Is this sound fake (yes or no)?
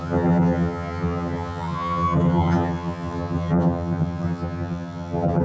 yes